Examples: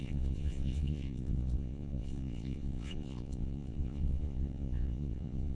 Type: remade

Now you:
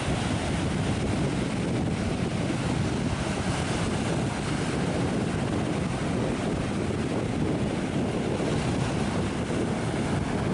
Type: recorded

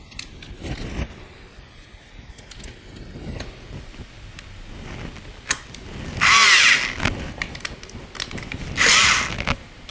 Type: recorded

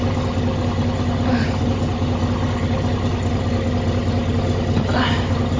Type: recorded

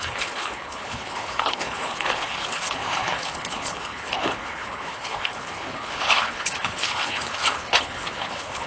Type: remade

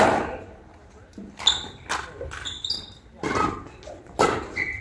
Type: recorded